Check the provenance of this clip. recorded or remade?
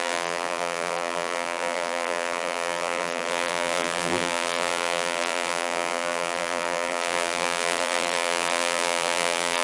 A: remade